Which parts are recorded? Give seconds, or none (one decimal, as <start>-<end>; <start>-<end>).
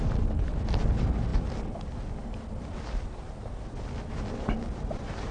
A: 0.0-5.3